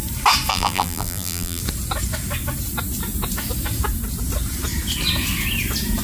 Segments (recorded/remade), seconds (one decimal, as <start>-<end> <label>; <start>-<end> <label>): 0.0-0.5 recorded; 0.5-1.6 remade; 1.6-6.0 recorded